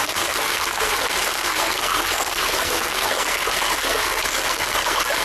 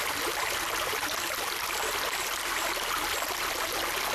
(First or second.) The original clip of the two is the second